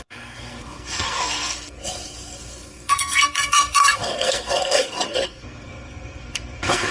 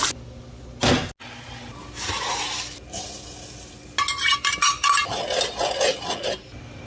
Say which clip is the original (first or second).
second